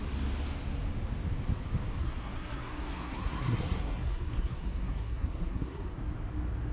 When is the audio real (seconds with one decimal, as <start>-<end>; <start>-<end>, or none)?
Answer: 0.0-2.0; 6.0-6.7